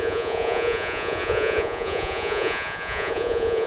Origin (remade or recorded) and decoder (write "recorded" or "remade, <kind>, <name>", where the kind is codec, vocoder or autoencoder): remade, vocoder, Vocos